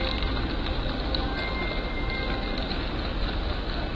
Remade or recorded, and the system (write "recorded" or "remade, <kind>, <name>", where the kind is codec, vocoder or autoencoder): recorded